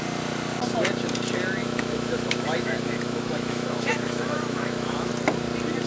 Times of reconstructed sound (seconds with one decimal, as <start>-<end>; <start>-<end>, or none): 1.6-5.1